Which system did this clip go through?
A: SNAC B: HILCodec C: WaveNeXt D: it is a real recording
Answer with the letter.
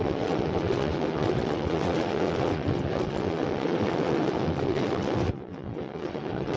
C